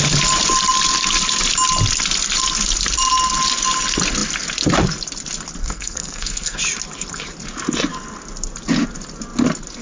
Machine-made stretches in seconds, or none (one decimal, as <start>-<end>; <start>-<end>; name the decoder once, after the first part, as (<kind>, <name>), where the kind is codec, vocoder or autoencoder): 5.6-6.6 (codec, SNAC)